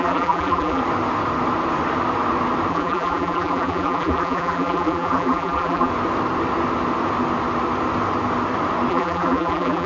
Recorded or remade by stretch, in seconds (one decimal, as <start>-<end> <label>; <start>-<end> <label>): 0.0-0.8 remade; 0.8-2.7 recorded; 2.7-5.9 remade; 5.9-8.9 recorded; 8.9-9.9 remade